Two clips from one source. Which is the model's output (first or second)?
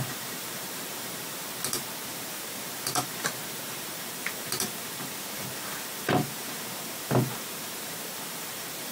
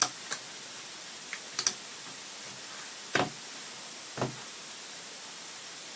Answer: first